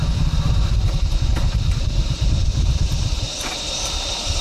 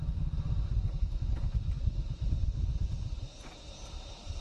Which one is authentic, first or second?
second